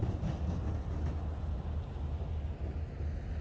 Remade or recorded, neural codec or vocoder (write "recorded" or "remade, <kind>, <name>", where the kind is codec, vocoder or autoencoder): recorded